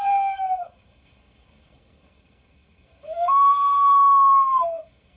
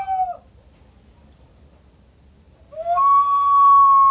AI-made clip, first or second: first